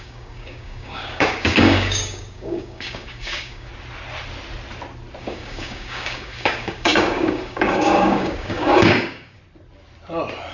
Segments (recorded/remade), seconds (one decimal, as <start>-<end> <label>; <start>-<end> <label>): 0.0-3.7 remade; 3.7-5.2 recorded; 5.2-9.4 remade; 9.4-10.5 recorded

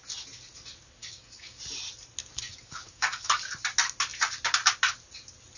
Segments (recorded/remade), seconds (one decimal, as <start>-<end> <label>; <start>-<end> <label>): 0.0-1.0 recorded; 1.0-1.6 remade; 1.6-2.5 recorded; 2.5-3.4 remade; 3.4-5.6 recorded